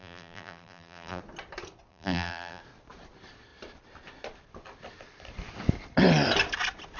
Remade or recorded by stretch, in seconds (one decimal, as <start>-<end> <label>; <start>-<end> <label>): 0.0-1.2 remade; 1.2-1.9 recorded; 1.9-2.6 remade; 2.6-7.0 recorded